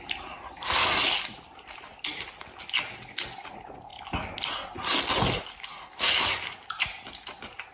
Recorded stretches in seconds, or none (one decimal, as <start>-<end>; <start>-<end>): 0.0-7.7